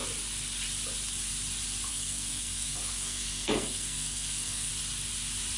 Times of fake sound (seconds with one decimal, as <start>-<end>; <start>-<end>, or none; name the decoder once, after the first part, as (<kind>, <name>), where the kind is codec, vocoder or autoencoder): 1.9-4.7 (codec, SNAC)